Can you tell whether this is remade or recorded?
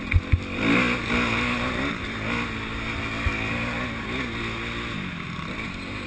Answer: recorded